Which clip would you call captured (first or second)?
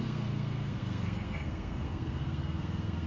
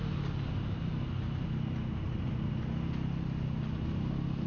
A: second